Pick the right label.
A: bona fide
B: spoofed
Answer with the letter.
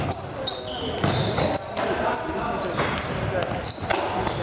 A